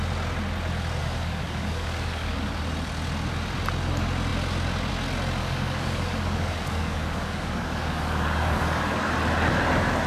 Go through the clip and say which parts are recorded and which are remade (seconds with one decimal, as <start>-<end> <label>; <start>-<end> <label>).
0.0-1.0 recorded; 1.0-2.5 remade; 2.5-5.4 recorded; 5.4-9.1 remade; 9.1-10.1 recorded